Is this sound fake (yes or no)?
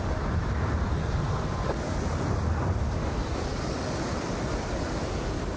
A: yes